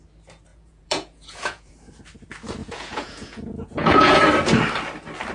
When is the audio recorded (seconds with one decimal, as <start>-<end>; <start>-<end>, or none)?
0.0-0.5; 1.7-2.6; 4.2-5.3